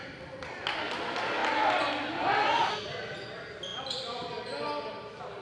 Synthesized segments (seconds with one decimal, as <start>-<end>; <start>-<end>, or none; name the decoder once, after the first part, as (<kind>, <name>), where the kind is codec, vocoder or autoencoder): 1.4-1.9 (vocoder, BigVGAN v2)